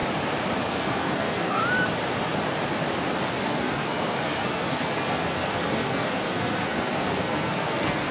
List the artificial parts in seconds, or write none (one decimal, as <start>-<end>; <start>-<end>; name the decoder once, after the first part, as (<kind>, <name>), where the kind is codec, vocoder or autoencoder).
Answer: 0.6-1.6 (codec, SNAC); 3.4-8.1